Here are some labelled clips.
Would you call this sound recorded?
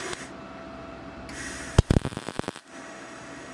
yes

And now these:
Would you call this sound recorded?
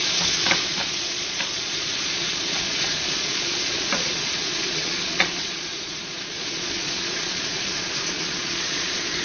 no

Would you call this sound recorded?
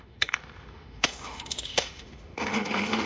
no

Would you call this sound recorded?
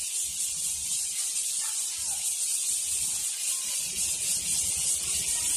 yes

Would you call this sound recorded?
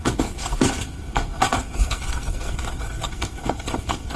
no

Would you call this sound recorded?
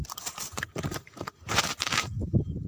no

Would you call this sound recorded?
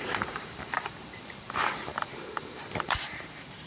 no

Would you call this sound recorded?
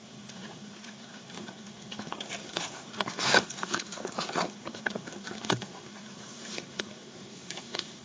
no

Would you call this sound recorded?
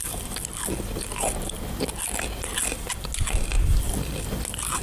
yes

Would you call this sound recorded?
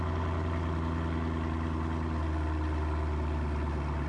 yes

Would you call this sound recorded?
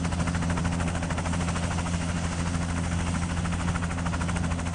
yes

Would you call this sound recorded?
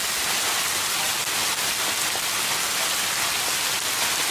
yes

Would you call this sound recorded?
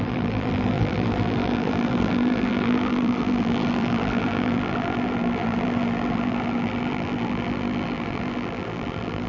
no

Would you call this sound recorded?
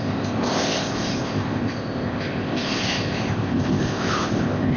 no